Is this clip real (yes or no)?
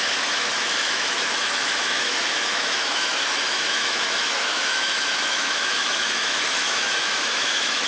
no